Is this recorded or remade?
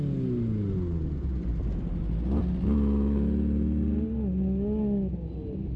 recorded